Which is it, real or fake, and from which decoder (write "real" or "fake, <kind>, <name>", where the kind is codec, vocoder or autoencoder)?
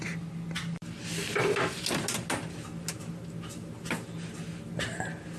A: real